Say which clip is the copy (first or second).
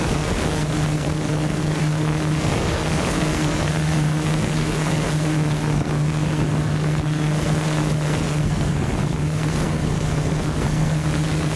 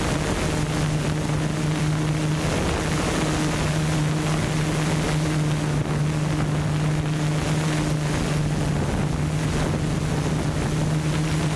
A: first